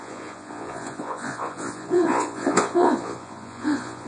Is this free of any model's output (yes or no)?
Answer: no